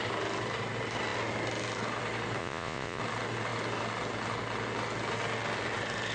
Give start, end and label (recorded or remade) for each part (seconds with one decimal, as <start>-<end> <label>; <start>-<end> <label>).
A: 0.0-2.4 recorded; 2.4-3.0 remade; 3.0-6.1 recorded